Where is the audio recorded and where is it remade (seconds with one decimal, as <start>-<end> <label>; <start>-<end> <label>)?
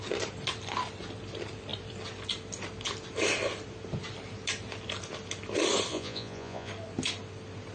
0.0-5.9 recorded; 5.9-6.7 remade; 6.7-7.7 recorded